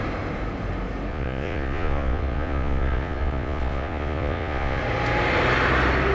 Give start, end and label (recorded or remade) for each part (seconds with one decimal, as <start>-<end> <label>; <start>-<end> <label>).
0.0-1.1 recorded; 1.1-4.8 remade; 4.8-6.1 recorded